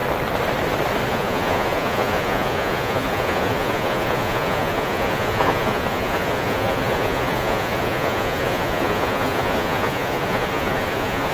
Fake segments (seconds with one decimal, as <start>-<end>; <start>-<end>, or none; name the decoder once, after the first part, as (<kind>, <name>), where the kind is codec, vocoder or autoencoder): 1.1-11.3 (vocoder, Vocos)